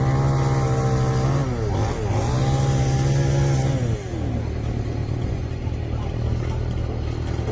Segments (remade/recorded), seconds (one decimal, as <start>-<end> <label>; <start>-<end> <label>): 0.0-5.0 recorded; 5.0-5.6 remade; 5.6-7.5 recorded